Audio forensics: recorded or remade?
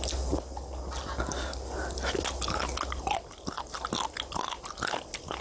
recorded